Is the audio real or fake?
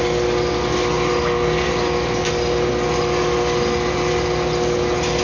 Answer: real